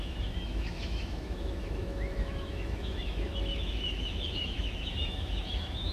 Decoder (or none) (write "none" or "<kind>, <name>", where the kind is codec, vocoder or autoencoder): autoencoder, DAC-VAE